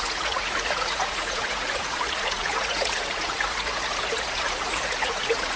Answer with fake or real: fake